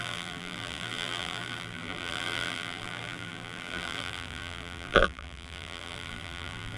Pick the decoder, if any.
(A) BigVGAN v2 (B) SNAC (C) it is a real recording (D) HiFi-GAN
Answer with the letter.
A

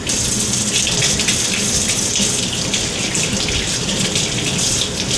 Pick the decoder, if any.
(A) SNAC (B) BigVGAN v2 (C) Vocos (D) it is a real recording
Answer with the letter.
D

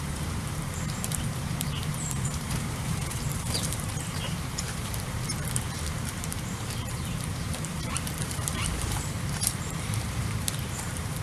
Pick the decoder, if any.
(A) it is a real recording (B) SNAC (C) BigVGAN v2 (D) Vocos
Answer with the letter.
C